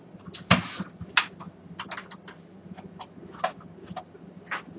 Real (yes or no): yes